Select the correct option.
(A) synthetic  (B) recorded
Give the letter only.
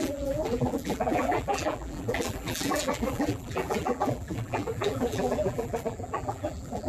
A